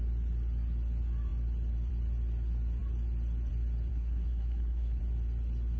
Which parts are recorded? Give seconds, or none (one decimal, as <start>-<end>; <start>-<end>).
0.0-3.9; 5.0-5.8